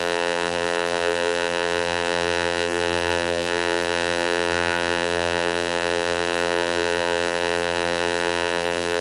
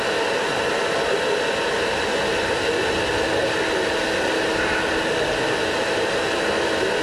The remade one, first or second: first